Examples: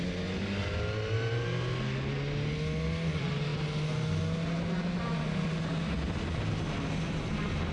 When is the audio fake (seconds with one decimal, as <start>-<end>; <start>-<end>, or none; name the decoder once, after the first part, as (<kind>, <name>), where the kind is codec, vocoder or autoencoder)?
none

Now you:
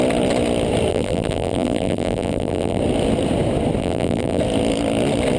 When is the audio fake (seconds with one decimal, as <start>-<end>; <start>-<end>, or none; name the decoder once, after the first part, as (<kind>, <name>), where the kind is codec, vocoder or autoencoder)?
0.9-2.8 (vocoder, BigVGAN v2); 3.8-4.4

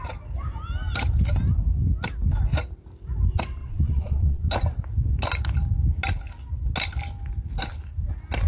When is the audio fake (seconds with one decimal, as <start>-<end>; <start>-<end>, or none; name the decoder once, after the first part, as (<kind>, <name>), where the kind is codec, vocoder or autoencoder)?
3.6-4.4 (vocoder, Vocos)